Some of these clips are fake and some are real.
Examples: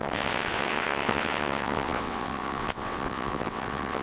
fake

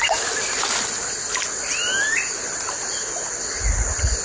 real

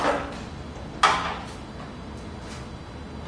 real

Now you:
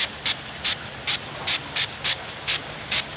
real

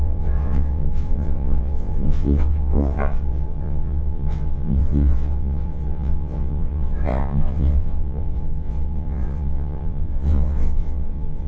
fake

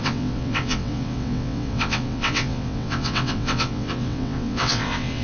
fake